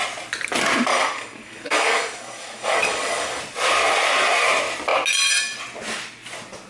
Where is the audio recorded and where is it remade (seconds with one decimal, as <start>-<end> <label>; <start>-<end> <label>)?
0.0-0.9 recorded; 0.9-3.4 remade; 3.4-6.7 recorded